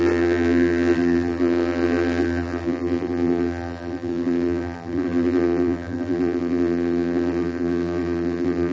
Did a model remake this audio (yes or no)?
yes